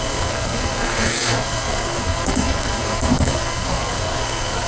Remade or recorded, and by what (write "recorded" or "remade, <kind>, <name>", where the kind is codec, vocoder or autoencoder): remade, codec, SNAC